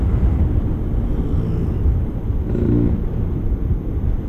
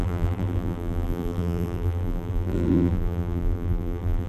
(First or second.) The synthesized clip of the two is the second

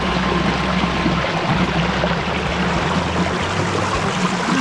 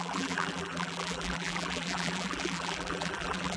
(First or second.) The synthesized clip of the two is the second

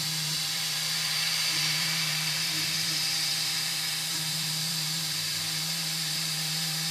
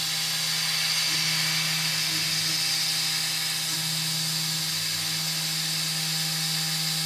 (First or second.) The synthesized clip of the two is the first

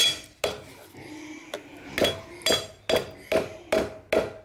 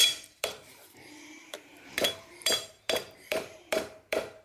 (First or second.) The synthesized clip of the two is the second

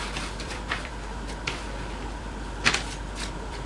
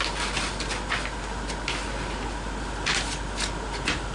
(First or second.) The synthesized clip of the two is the first